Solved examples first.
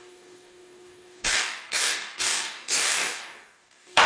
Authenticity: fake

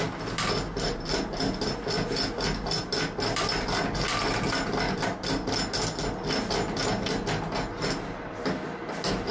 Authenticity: real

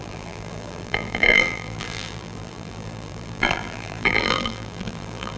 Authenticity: fake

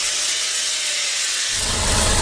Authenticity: fake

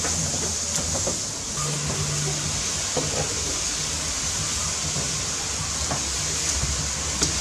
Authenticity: real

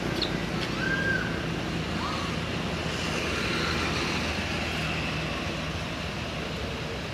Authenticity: real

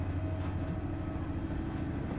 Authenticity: real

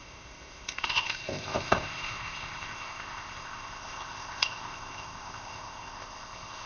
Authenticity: fake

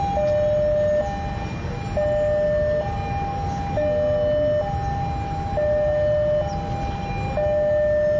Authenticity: real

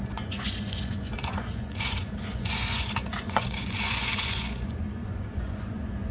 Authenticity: fake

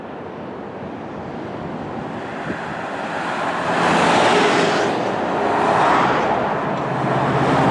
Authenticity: real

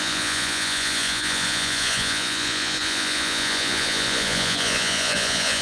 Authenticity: fake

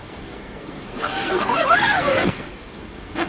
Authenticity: fake